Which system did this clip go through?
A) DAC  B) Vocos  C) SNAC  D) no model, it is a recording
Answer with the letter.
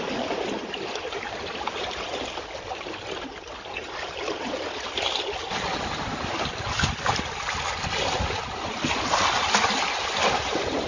D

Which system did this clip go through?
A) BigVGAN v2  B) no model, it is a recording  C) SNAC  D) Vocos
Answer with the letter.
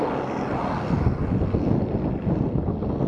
B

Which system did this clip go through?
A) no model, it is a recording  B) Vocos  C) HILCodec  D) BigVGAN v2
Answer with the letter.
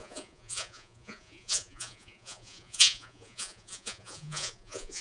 B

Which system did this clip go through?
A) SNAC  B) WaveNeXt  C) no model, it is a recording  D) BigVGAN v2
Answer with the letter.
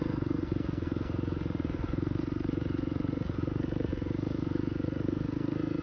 A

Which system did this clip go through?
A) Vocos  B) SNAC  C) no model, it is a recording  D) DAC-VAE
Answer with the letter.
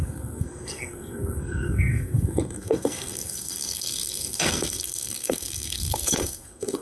B